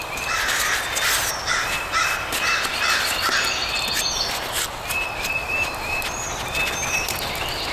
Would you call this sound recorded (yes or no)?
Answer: yes